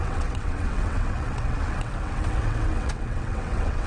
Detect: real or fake fake